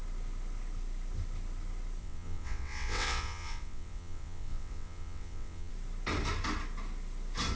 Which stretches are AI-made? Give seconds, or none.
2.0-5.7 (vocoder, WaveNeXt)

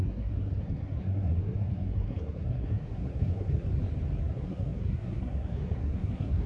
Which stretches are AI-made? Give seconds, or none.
0.0-3.7 (codec, SNAC); 4.2-6.5